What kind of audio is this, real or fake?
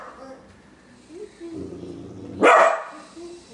real